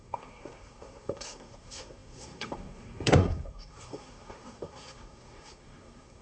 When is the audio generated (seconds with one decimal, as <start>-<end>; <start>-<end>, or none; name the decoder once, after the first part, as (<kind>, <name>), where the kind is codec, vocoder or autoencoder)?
0.0-6.2 (codec, SNAC)